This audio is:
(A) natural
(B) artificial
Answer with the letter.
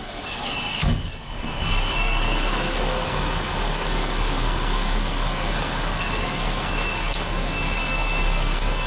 B